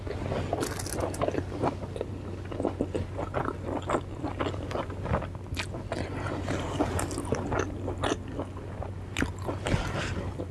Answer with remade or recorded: recorded